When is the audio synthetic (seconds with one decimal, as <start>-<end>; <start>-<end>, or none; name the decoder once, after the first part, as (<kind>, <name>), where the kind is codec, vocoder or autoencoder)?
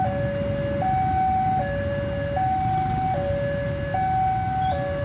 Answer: none